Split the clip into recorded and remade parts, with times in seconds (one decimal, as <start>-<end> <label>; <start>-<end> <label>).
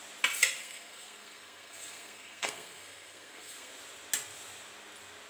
0.0-0.6 recorded; 0.6-3.7 remade; 3.7-5.3 recorded